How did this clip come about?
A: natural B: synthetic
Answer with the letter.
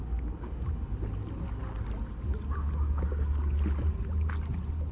A